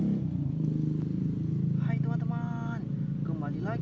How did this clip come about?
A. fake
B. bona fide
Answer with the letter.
B